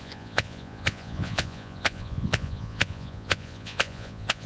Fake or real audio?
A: fake